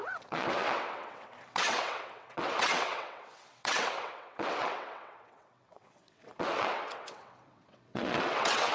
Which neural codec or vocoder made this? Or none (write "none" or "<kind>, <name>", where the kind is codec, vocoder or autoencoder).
vocoder, WaveNeXt